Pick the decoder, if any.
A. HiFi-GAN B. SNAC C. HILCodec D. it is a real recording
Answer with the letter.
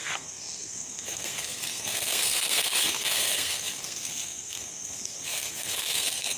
B